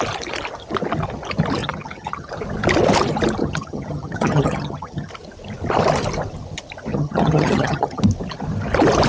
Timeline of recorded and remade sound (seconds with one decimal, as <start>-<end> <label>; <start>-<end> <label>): 0.0-1.6 recorded; 1.6-2.3 remade; 2.3-3.4 recorded; 3.4-5.1 remade; 5.1-6.9 recorded; 6.9-8.0 remade; 8.0-9.1 recorded